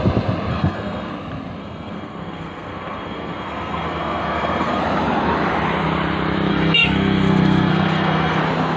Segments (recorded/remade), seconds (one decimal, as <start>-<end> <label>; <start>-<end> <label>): 0.0-0.5 recorded; 0.5-1.1 remade; 1.1-1.6 recorded; 1.6-4.8 remade; 4.8-6.5 recorded; 6.5-8.4 remade; 8.4-8.8 recorded